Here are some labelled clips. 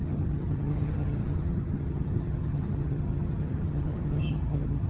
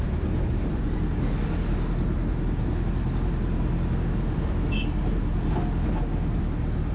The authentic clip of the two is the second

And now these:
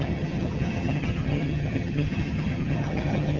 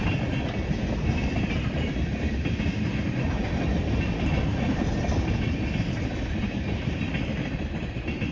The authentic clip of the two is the second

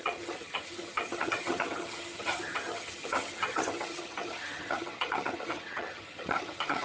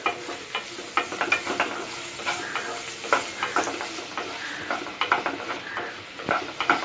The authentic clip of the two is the second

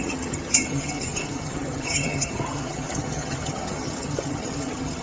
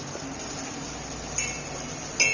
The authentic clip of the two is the second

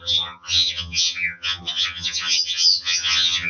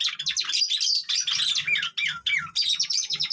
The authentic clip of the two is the second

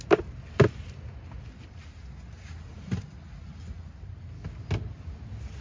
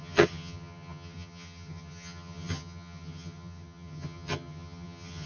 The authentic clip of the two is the first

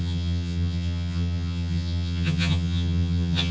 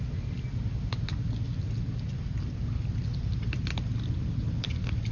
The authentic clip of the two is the second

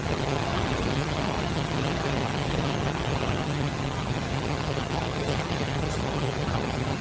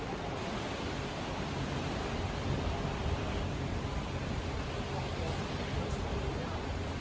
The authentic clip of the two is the second